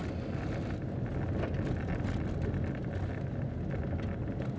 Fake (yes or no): no